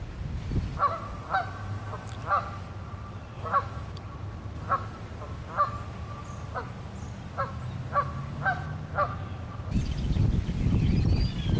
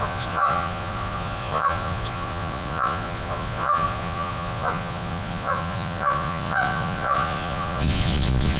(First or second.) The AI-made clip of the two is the second